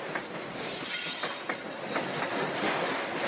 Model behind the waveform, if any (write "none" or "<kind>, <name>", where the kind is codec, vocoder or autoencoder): none